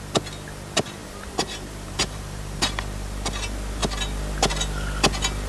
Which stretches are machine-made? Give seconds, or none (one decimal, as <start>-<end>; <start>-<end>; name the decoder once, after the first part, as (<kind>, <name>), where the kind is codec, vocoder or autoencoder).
1.0-2.6 (vocoder, BigVGAN v2)